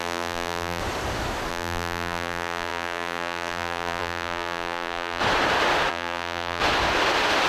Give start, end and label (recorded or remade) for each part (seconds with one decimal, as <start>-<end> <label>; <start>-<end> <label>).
0.0-0.8 remade; 0.8-1.5 recorded; 1.5-5.2 remade; 5.2-5.9 recorded; 5.9-6.6 remade; 6.6-7.5 recorded